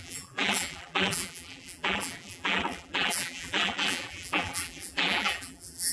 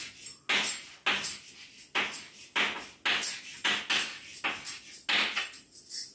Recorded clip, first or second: second